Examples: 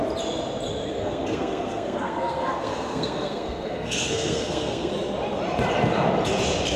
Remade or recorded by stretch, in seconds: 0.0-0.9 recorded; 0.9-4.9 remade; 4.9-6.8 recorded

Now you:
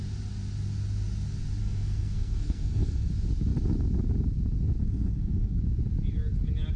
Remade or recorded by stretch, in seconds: 0.0-1.6 recorded; 1.6-3.1 remade; 3.1-4.8 recorded; 4.8-5.6 remade; 5.6-6.8 recorded

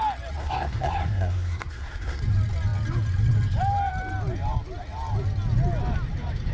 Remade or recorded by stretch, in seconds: 0.0-0.4 recorded; 0.4-2.2 remade; 2.2-6.5 recorded

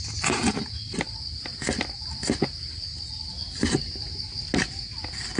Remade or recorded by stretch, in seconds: 0.0-5.4 recorded

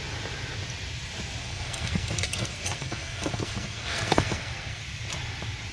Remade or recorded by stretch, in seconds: 0.0-1.4 recorded; 1.4-4.8 remade; 4.8-5.7 recorded

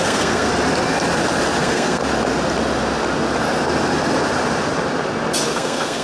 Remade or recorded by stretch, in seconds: 0.0-0.5 remade; 0.5-1.6 recorded; 1.6-2.0 remade; 2.0-5.5 recorded; 5.5-6.0 remade

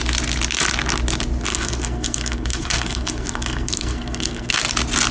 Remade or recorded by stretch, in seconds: 0.0-1.5 recorded; 1.5-4.6 remade; 4.6-5.1 recorded